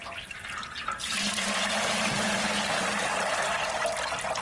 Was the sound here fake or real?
real